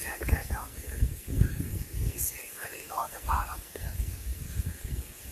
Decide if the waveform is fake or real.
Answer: fake